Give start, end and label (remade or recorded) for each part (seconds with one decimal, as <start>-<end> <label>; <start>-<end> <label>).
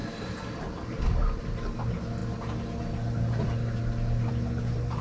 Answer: 0.0-1.4 remade; 1.4-5.0 recorded